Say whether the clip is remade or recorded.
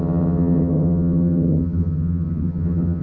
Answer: remade